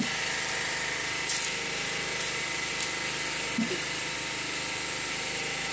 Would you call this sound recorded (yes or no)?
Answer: yes